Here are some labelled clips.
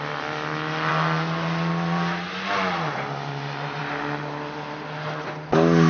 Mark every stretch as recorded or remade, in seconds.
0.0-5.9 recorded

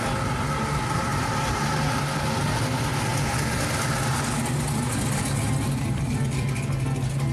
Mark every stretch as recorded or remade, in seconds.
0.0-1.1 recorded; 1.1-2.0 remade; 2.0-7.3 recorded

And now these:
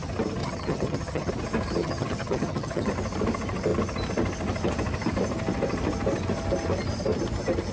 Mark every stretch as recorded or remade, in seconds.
0.0-0.4 recorded; 0.4-1.3 remade; 1.3-1.8 recorded; 1.8-2.9 remade; 2.9-7.7 recorded

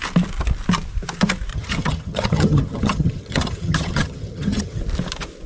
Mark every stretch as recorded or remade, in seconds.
0.0-1.5 recorded; 1.5-4.8 remade; 4.8-5.5 recorded

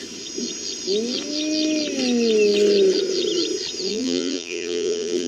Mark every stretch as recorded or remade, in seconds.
0.0-3.9 recorded; 3.9-5.3 remade

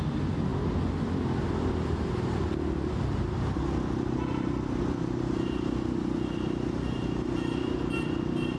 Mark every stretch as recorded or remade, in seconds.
0.0-8.6 recorded

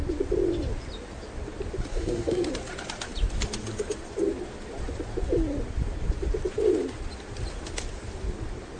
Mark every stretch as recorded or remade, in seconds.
0.0-1.9 recorded; 1.9-2.5 remade; 2.5-8.8 recorded